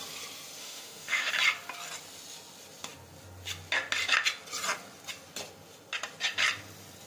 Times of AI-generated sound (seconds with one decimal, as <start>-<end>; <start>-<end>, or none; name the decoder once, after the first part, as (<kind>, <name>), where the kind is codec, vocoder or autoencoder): 0.6-1.3 (autoencoder, DAC-VAE)